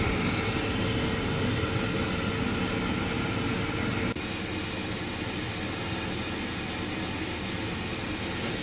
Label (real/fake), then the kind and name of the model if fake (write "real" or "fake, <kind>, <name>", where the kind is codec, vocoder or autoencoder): real